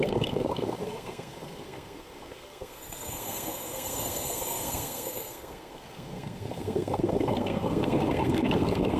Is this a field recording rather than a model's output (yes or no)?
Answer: no